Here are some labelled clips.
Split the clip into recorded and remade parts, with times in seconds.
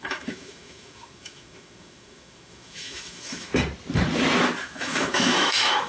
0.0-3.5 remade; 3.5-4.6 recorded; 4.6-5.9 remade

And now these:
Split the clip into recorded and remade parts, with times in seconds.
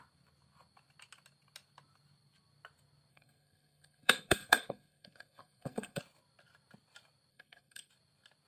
0.0-3.1 recorded; 3.1-6.0 remade; 6.0-7.3 recorded; 7.3-7.9 remade; 7.9-8.5 recorded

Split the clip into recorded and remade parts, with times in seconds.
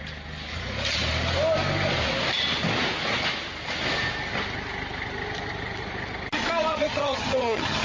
0.0-6.7 recorded; 6.7-7.8 remade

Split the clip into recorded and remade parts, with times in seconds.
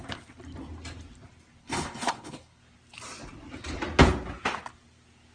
0.0-1.6 recorded; 1.6-2.6 remade; 2.6-5.3 recorded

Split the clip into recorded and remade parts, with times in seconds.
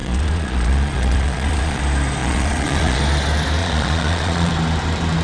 0.0-1.8 remade; 1.8-2.2 recorded; 2.2-3.0 remade; 3.0-3.6 recorded; 3.6-4.5 remade; 4.5-5.2 recorded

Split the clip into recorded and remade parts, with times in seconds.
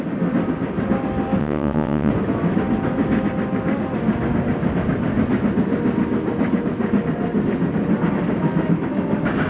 0.0-1.4 recorded; 1.4-2.1 remade; 2.1-9.5 recorded